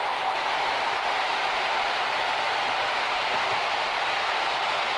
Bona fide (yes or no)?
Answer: yes